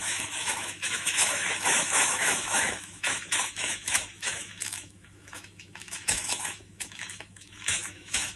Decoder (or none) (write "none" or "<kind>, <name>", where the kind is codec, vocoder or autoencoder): autoencoder, DAC-VAE